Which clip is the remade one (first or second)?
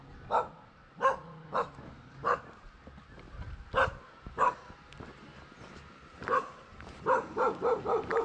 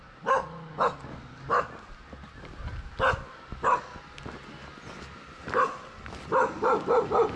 first